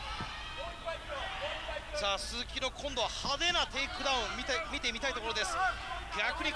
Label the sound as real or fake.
real